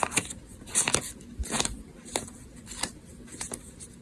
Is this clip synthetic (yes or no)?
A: no